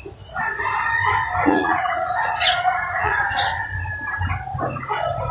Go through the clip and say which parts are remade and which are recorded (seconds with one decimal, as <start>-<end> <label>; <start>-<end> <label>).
0.0-1.4 recorded; 1.4-3.7 remade; 3.7-5.3 recorded